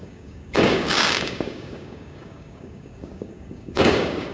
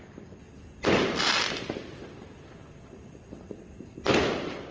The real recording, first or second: second